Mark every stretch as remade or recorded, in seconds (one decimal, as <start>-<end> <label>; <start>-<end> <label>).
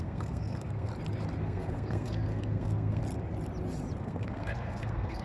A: 0.0-0.9 remade; 0.9-1.4 recorded; 1.4-3.0 remade; 3.0-4.0 recorded; 4.0-5.2 remade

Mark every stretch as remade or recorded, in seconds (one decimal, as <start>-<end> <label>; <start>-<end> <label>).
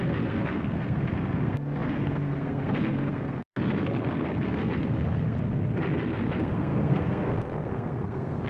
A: 0.0-8.5 remade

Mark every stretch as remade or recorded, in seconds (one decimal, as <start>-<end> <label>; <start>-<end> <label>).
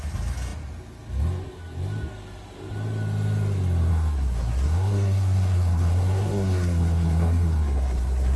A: 0.0-3.9 recorded; 3.9-8.4 remade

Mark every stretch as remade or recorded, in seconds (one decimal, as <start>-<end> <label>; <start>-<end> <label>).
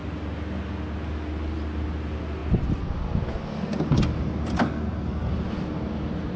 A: 0.0-4.6 recorded; 4.6-5.3 remade; 5.3-6.4 recorded